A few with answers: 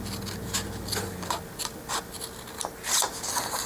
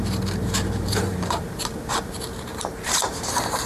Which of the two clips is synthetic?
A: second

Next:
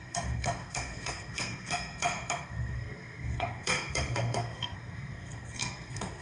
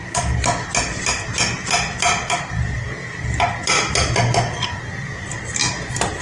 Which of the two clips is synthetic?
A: first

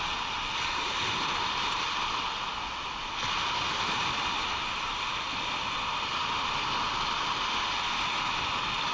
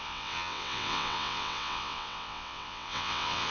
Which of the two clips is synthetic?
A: second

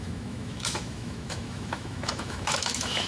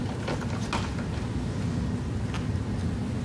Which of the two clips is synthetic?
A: first